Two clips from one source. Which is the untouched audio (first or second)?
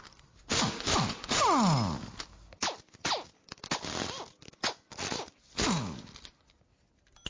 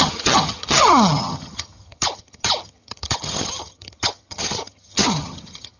first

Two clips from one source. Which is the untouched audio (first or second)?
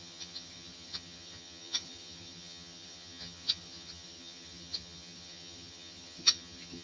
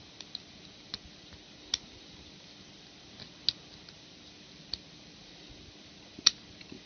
second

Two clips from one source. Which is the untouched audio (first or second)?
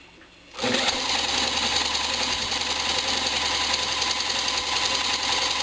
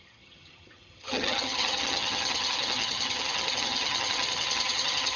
first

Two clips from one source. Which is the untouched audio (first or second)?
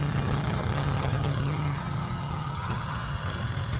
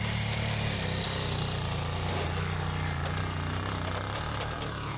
second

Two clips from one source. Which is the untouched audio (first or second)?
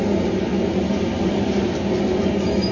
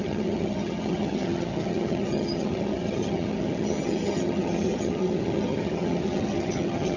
first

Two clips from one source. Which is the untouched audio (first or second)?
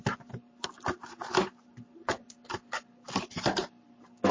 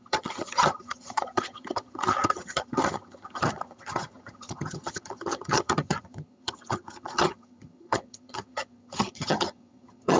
first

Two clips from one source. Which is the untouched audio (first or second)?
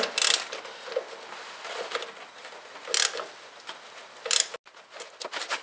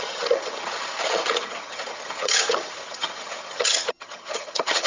first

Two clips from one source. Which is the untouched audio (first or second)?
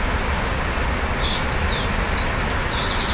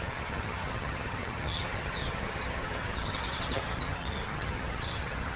first